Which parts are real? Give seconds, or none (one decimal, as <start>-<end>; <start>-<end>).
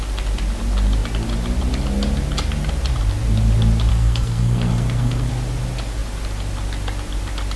0.0-3.9; 5.3-7.6